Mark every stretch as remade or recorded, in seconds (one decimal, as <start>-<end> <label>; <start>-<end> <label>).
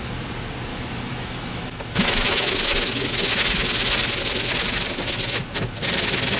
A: 0.0-0.7 recorded; 0.7-3.4 remade; 3.4-6.4 recorded